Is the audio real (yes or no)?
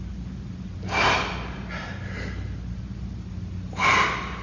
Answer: yes